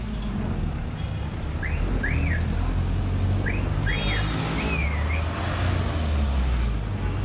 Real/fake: real